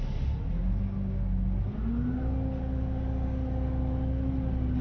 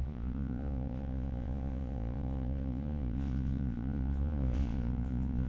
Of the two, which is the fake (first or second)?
second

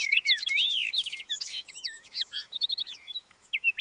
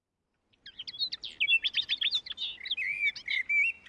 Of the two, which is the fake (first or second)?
first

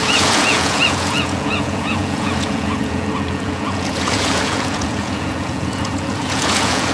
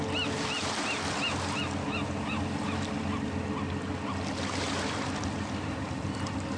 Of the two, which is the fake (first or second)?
first